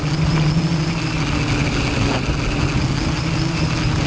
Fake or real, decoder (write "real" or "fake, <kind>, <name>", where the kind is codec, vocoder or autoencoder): real